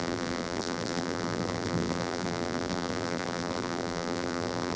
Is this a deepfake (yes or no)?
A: yes